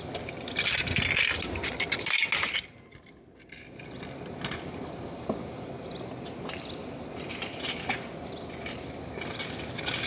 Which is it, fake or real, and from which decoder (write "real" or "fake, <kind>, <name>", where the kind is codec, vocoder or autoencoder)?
real